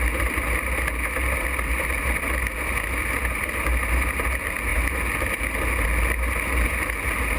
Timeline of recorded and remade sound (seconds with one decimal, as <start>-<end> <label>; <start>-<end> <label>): 0.0-7.4 recorded